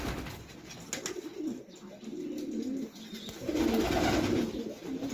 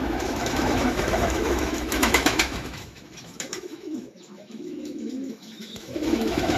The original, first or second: first